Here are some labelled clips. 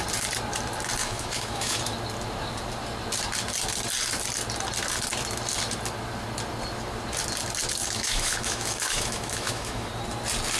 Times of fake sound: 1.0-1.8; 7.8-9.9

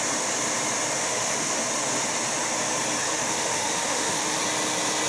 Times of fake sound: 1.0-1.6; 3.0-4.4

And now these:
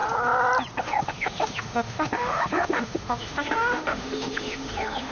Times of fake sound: 0.8-5.1

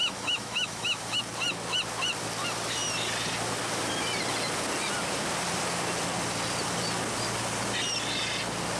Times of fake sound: 0.0-1.2

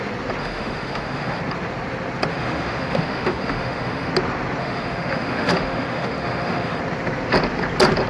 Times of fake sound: 0.4-1.4; 2.3-4.1; 4.6-6.8